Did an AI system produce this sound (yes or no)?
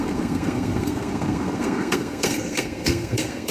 yes